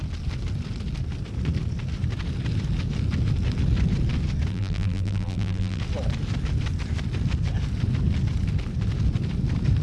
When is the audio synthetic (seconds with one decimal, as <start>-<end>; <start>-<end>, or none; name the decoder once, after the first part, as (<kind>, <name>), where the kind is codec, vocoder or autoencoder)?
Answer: 4.5-5.8 (vocoder, BigVGAN v2)